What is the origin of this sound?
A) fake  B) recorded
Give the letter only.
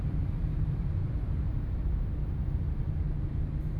A